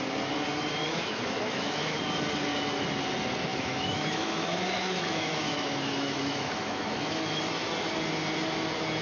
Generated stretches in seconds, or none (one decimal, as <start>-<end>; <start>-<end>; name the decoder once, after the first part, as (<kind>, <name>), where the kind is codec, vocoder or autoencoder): 0.8-2.0 (autoencoder, DAC-VAE); 3.5-7.4

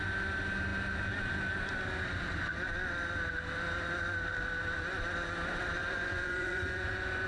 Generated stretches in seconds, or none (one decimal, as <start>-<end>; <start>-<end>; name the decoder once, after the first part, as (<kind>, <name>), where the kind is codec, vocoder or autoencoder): 5.8-7.3 (vocoder, Vocos)

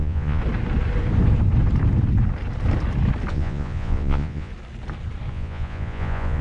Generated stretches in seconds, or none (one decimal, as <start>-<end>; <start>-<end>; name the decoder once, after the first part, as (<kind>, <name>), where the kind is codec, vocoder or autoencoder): 0.0-0.4 (vocoder, Vocos); 3.3-4.5; 5.3-6.4

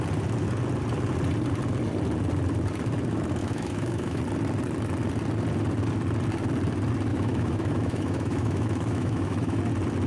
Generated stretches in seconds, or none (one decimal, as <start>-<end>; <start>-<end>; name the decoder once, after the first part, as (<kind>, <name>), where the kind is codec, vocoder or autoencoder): 3.4-4.2 (autoencoder, DAC-VAE); 7.1-9.6

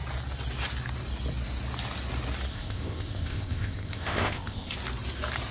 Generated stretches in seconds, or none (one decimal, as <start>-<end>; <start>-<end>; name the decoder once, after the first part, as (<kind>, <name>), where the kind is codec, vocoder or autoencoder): 2.5-4.7 (codec, ZipCodec)

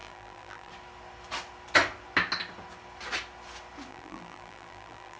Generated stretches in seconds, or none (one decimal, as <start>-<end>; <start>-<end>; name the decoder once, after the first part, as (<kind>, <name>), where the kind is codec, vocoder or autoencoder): 0.0-0.7 (vocoder, BigVGAN v2); 3.9-5.2

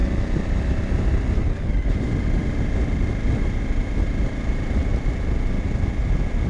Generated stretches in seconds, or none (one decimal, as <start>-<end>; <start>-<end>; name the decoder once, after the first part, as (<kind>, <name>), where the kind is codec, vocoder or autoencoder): none